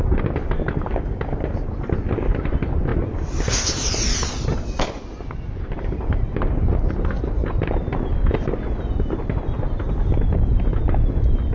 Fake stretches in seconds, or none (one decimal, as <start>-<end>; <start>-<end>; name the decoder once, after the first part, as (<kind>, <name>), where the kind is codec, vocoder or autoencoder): none